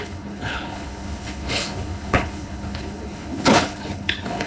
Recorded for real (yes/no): no